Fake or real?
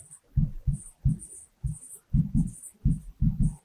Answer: fake